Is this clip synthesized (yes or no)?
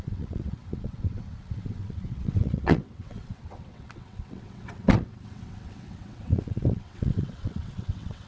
yes